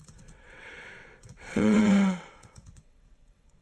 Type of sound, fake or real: fake